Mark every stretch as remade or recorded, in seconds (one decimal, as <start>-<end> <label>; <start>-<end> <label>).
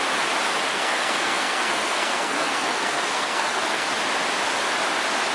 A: 0.0-0.7 recorded; 0.7-3.9 remade; 3.9-5.3 recorded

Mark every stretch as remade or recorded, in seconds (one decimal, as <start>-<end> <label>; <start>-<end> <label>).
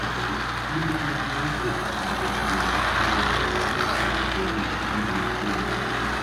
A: 0.0-6.2 recorded